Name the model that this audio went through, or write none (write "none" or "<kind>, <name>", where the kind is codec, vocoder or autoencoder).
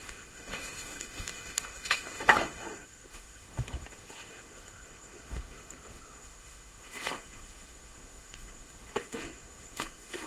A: autoencoder, DAC-VAE